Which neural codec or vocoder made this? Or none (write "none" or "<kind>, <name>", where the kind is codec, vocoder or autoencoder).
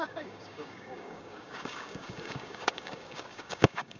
codec, DAC